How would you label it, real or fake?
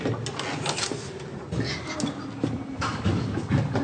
real